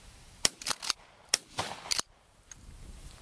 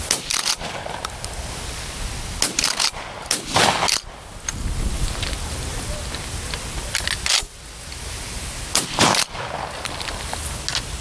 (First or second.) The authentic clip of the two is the second